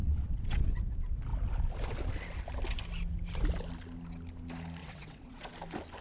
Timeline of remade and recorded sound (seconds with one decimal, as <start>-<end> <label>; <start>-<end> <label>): 0.0-0.7 remade; 0.7-4.8 recorded; 4.8-5.5 remade; 5.5-6.0 recorded